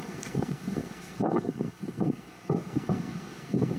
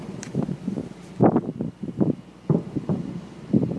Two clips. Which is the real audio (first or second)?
second